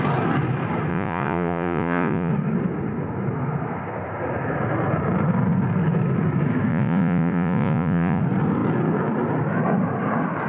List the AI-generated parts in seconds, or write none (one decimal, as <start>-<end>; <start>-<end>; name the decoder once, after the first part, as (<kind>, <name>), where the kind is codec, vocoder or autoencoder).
0.9-2.3 (vocoder, Vocos); 6.7-8.2